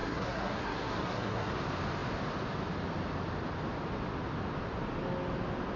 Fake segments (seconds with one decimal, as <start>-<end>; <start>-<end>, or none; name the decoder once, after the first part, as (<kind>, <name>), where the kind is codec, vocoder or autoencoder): 0.0-1.5 (codec, SNAC)